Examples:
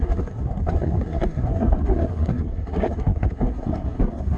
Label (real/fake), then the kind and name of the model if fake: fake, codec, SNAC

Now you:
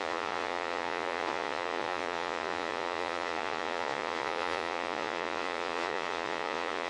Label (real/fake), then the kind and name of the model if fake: fake, vocoder, Vocos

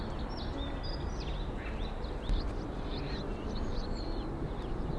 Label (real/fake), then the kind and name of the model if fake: real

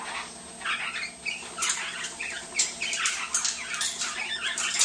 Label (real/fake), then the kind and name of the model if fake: real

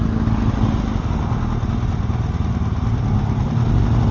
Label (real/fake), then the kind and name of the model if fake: real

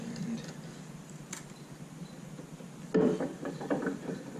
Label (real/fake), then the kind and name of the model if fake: real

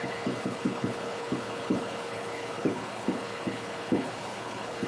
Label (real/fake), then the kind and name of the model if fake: fake, codec, HILCodec